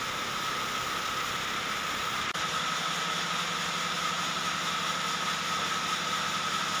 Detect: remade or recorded recorded